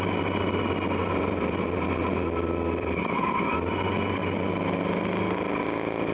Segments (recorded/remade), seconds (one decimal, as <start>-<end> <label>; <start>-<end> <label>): 0.0-1.0 recorded; 1.0-3.5 remade; 3.5-6.1 recorded